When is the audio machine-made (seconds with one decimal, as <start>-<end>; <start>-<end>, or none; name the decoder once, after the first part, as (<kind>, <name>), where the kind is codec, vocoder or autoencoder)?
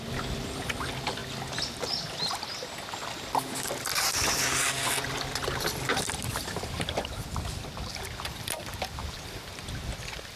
5.9-7.9 (vocoder, BigVGAN v2)